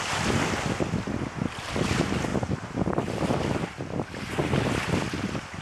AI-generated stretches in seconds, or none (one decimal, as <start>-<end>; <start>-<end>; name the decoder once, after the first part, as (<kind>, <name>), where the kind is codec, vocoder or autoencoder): none